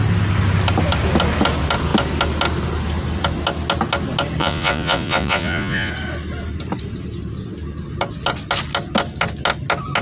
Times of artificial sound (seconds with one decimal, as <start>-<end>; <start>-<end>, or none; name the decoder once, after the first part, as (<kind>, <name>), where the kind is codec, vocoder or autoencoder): 4.4-5.9 (vocoder, Vocos)